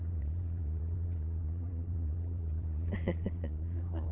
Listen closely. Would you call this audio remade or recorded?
remade